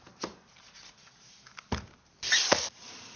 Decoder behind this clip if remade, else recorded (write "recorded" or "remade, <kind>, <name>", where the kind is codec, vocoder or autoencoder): recorded